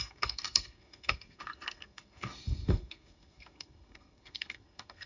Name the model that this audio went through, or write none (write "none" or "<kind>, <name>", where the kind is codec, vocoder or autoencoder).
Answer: codec, SNAC